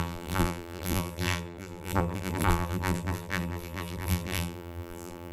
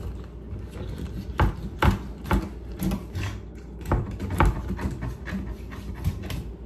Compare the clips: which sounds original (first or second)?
second